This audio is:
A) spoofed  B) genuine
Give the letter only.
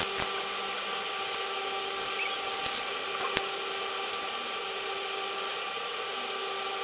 B